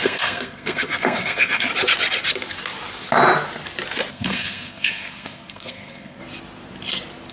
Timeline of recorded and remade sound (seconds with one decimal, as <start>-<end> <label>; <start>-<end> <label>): 0.0-1.7 remade; 1.7-4.1 recorded; 4.1-6.2 remade; 6.2-7.3 recorded